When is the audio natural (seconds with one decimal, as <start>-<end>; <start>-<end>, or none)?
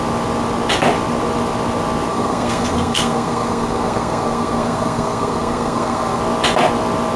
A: 0.0-2.1; 6.2-7.2